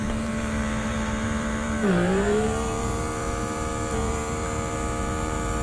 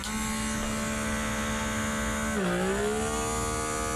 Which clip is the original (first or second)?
second